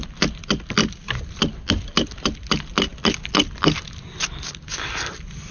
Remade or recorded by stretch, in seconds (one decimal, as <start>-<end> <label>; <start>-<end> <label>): 0.0-5.5 recorded